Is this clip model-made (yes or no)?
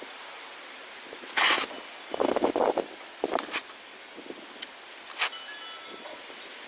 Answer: no